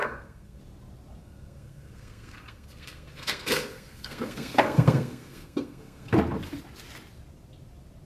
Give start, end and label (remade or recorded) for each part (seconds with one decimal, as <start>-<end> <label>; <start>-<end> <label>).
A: 0.0-0.6 remade; 0.6-1.2 recorded; 1.2-6.1 remade; 6.1-8.1 recorded